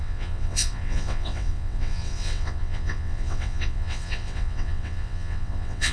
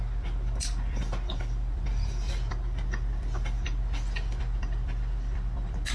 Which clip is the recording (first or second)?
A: second